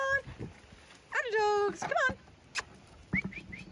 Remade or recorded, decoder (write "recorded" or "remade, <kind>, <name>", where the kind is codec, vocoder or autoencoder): recorded